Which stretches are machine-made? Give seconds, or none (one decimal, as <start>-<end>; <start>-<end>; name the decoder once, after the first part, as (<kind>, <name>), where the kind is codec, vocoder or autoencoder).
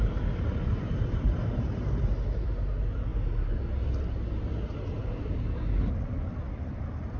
none